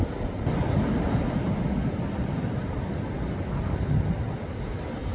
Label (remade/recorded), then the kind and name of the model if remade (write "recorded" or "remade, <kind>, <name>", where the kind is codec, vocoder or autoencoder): recorded